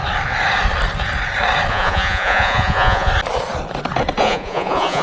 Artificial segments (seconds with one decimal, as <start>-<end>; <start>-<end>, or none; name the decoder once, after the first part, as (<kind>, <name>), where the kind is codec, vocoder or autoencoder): 1.7-3.1 (vocoder, Vocos); 4.2-5.0